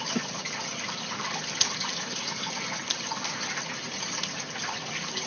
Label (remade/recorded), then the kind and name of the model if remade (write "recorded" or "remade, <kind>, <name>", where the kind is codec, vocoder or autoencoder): recorded